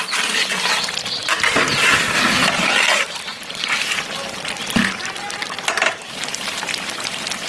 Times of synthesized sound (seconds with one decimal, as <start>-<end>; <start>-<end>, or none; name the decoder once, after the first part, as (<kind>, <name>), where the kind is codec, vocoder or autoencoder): 1.2-4.4 (vocoder, BigVGAN v2)